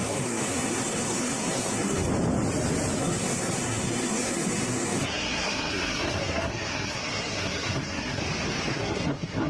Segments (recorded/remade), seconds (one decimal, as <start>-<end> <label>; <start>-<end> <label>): 0.0-2.1 remade; 2.1-3.0 recorded; 3.0-8.2 remade; 8.2-8.7 recorded; 8.7-9.5 remade